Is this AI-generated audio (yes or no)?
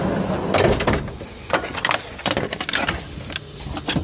no